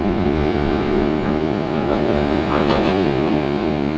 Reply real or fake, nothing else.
fake